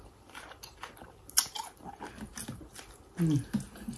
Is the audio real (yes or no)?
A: yes